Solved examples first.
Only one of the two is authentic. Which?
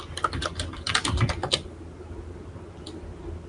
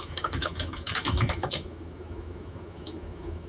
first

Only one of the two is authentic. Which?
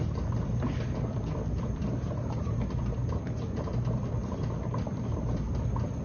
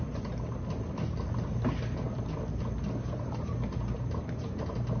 second